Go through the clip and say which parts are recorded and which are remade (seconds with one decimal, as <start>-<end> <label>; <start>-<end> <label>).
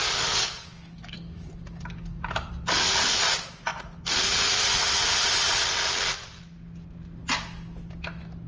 0.0-2.5 remade; 2.5-8.5 recorded